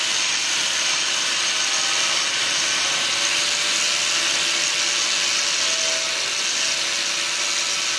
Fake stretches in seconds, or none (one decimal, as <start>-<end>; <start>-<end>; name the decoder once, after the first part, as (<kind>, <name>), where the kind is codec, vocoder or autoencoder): none